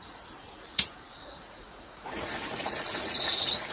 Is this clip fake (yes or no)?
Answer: yes